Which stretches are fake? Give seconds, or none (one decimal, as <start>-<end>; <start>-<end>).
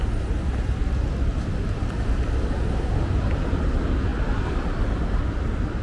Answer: none